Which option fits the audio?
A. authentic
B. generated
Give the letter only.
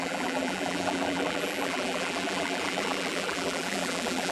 B